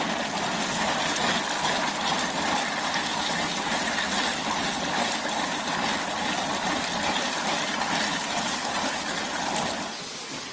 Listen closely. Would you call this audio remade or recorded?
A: recorded